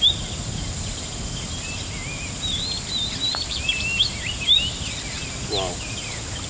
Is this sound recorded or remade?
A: recorded